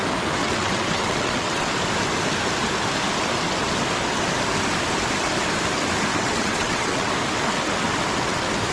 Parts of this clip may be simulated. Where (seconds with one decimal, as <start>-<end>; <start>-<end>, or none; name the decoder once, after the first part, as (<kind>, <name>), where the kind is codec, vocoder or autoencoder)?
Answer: 0.4-1.7 (vocoder, WaveNeXt); 6.1-7.1